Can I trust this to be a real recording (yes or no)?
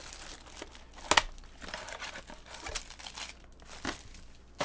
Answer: yes